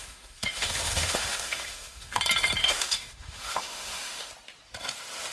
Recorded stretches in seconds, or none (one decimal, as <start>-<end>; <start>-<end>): 2.2-2.6; 4.3-5.3